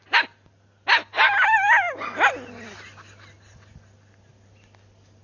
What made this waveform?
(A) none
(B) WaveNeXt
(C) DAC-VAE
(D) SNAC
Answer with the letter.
A